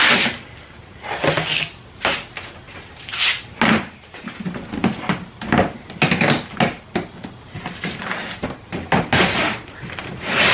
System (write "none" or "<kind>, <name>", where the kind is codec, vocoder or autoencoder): none